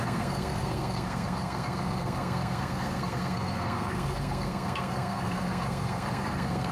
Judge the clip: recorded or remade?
remade